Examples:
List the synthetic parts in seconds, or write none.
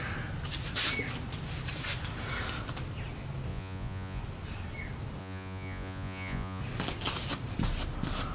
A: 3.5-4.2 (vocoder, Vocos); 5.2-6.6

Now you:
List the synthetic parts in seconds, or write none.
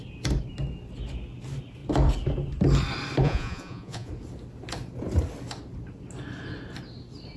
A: 3.2-4.1 (vocoder, Vocos)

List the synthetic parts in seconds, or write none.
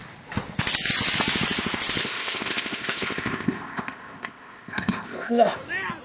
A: 2.0-5.6 (codec, ZipCodec)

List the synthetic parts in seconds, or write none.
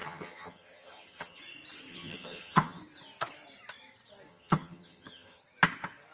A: 0.0-1.4 (vocoder, HiFi-GAN); 1.9-2.8; 4.3-5.4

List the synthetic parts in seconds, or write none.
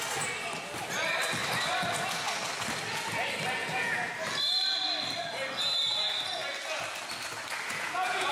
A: 3.6-4.1 (vocoder, Vocos); 7.7-8.3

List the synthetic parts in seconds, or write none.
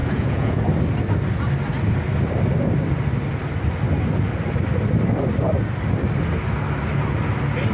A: 0.0-0.6 (vocoder, Vocos)